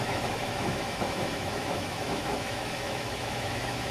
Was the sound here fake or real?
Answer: fake